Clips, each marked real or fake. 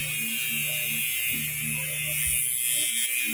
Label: real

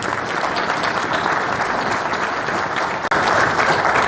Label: real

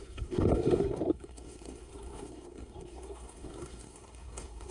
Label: fake